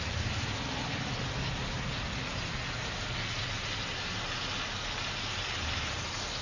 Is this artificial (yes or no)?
no